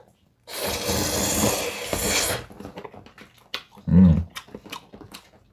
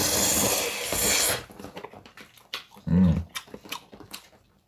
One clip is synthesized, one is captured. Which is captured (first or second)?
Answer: first